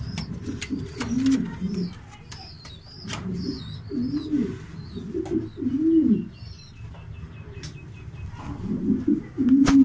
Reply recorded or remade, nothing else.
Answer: recorded